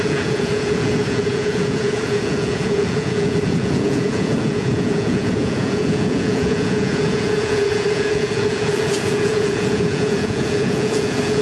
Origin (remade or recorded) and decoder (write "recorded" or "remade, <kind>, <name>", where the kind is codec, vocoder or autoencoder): remade, vocoder, Vocos